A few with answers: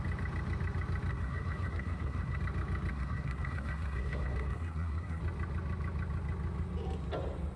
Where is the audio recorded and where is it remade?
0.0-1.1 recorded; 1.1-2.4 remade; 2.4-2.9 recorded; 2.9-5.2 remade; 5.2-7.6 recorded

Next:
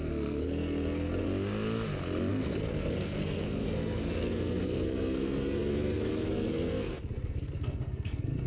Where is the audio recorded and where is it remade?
0.0-1.2 remade; 1.2-2.3 recorded; 2.3-8.5 remade

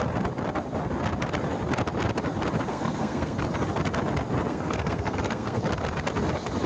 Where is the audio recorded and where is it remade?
0.0-2.7 recorded; 2.7-3.4 remade; 3.4-4.5 recorded; 4.5-5.6 remade; 5.6-6.7 recorded